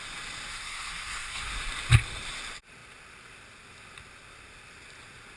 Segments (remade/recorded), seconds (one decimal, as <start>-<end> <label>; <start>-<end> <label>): 0.0-0.5 recorded; 0.5-1.5 remade; 1.5-5.4 recorded